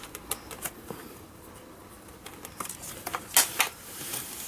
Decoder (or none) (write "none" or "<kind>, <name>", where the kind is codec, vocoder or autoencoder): none